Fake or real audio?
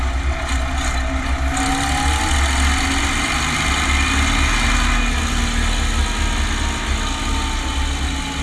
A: real